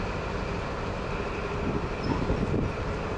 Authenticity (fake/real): real